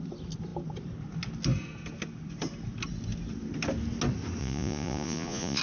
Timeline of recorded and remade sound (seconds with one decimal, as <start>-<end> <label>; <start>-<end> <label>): 0.0-4.4 recorded; 4.4-5.6 remade